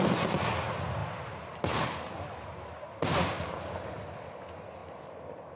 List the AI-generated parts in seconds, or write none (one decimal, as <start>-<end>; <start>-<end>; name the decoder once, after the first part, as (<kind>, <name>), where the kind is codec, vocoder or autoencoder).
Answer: 1.0-3.7 (vocoder, BigVGAN v2)